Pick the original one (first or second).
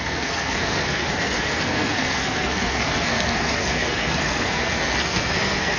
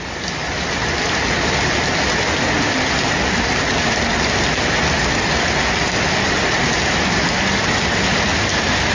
second